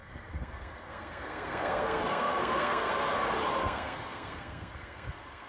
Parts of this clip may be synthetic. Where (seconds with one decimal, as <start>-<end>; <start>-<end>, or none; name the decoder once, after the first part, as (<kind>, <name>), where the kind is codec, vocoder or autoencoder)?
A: 0.0-3.1 (codec, SNAC); 3.6-5.5